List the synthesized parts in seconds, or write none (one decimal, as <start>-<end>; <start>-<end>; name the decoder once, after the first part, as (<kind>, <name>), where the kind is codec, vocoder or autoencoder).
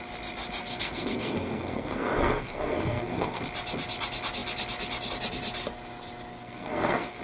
0.6-3.4 (codec, SNAC); 6.3-7.2